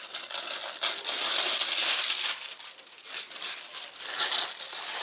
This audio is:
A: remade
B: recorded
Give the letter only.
B